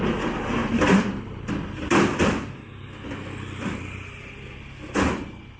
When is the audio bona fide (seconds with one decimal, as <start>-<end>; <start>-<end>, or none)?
0.0-0.6; 1.5-5.6